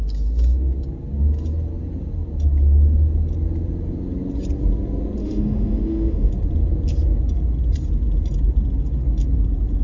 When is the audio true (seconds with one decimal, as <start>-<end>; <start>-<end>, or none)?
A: 0.0-5.2; 6.3-9.8